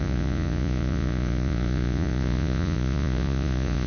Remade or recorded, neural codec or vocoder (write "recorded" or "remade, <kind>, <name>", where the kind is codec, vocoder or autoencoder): remade, vocoder, Vocos